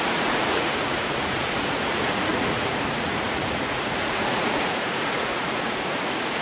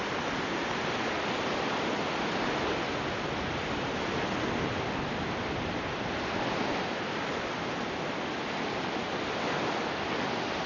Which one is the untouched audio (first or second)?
second